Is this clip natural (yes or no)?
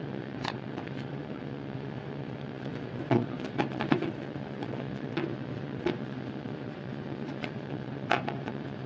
no